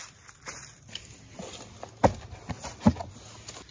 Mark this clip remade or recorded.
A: recorded